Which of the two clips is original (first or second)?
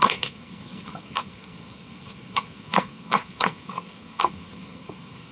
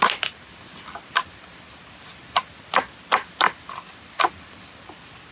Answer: second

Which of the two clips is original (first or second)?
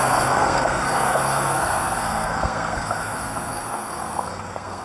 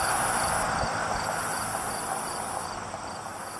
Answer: second